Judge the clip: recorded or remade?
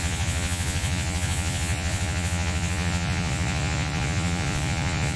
remade